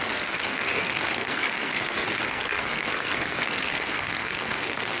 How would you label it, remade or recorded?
remade